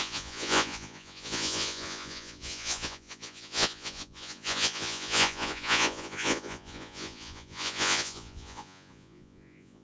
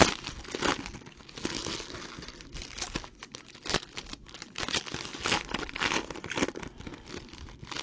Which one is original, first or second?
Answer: second